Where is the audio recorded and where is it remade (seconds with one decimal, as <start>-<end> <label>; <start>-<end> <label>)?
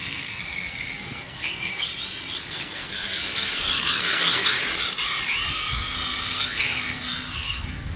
0.0-1.9 remade; 1.9-2.4 recorded; 2.4-4.6 remade; 4.6-5.5 recorded; 5.5-8.0 remade